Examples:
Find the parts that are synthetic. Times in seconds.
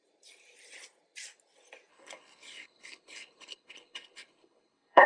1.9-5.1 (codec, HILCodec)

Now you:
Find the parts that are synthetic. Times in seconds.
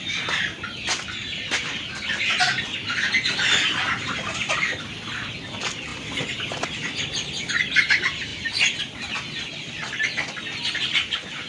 none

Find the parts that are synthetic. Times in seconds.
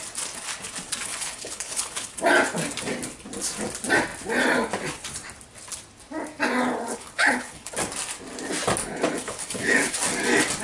1.1-2.1 (codec, HILCodec); 6.9-7.7; 8.8-9.9